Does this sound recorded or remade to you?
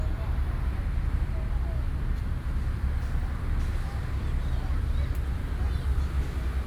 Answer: recorded